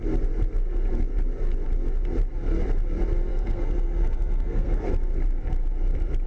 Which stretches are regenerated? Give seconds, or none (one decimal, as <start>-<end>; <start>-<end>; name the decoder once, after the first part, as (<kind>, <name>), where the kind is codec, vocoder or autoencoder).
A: 3.3-4.9 (codec, SNAC)